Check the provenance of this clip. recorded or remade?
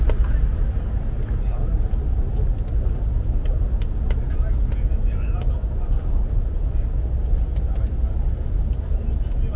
recorded